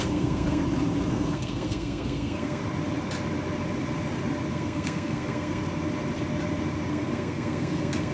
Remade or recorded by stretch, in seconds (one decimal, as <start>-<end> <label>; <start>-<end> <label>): 0.0-0.6 remade; 0.6-1.1 recorded; 1.1-2.6 remade; 2.6-4.5 recorded; 4.5-5.6 remade; 5.6-6.9 recorded; 6.9-8.1 remade